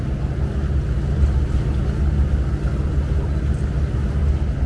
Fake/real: real